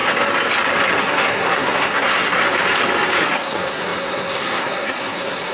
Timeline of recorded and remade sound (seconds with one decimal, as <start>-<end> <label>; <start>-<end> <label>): 0.0-1.0 recorded; 1.0-2.4 remade; 2.4-3.2 recorded; 3.2-5.5 remade